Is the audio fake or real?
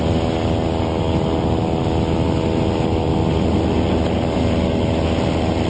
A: real